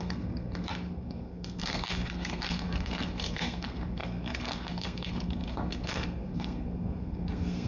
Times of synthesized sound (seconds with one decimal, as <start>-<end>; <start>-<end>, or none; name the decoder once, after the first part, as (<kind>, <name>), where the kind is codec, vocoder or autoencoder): 0.0-7.7 (codec, SNAC)